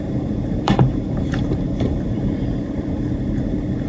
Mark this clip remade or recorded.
remade